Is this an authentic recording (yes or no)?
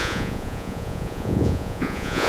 no